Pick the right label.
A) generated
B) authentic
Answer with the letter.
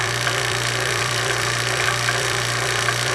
A